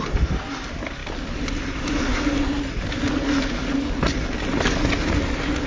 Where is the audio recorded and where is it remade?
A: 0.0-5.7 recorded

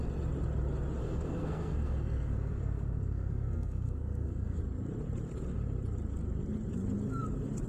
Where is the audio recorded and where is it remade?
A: 0.0-1.0 recorded; 1.0-4.6 remade; 4.6-7.7 recorded